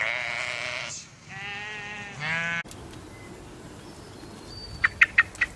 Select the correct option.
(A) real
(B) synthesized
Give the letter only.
A